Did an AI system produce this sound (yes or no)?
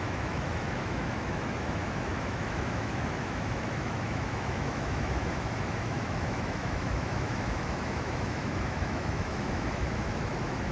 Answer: yes